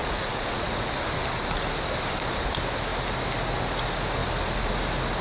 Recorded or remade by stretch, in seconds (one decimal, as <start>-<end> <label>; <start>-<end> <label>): 0.0-0.9 remade; 0.9-5.2 recorded